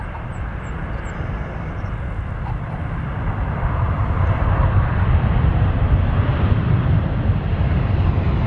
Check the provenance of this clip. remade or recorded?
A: remade